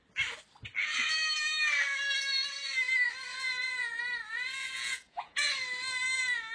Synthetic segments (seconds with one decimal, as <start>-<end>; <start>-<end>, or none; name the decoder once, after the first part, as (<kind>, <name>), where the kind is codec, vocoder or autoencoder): 3.3-4.0 (vocoder, Vocos); 4.6-5.5

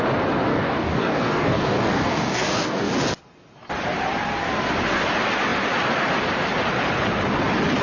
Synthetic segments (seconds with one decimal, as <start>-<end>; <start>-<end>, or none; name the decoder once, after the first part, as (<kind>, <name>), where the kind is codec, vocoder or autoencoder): 0.5-2.9 (codec, DAC)

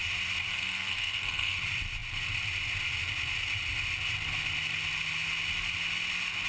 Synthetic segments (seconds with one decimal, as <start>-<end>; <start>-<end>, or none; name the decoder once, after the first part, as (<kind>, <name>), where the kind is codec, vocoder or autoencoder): 0.5-1.6 (codec, SNAC)

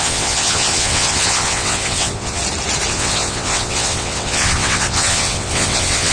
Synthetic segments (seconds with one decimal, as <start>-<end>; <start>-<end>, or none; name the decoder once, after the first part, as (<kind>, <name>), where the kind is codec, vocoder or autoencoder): 0.0-2.4 (vocoder, WaveNeXt); 2.9-6.1

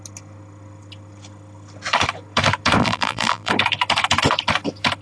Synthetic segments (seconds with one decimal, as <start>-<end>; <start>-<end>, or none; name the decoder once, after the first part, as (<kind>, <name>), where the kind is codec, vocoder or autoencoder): 2.8-3.5 (vocoder, BigVGAN v2)